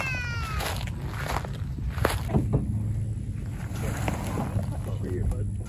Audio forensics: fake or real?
real